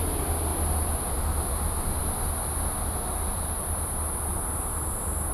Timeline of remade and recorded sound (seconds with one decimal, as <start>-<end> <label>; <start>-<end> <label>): 0.0-5.3 recorded